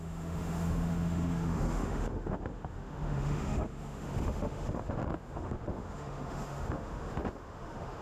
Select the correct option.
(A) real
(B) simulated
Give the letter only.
B